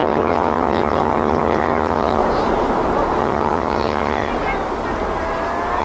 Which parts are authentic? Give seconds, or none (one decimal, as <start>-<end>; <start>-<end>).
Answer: 2.2-3.2; 4.3-5.8